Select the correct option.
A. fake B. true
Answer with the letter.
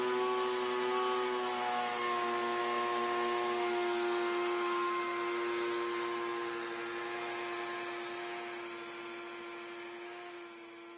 B